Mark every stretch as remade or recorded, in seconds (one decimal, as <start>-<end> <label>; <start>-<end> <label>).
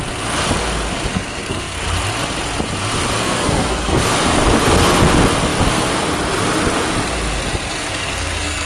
0.0-1.1 recorded; 1.1-1.8 remade; 1.8-3.2 recorded; 3.2-4.0 remade; 4.0-7.7 recorded; 7.7-8.7 remade